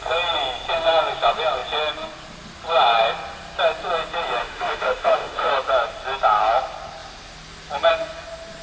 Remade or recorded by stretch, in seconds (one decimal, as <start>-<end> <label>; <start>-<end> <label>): 0.0-4.4 recorded; 4.4-5.5 remade; 5.5-8.6 recorded